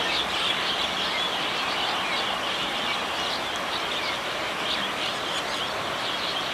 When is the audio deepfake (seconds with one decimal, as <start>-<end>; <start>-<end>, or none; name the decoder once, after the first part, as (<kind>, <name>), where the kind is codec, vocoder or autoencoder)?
3.9-6.5 (vocoder, BigVGAN v2)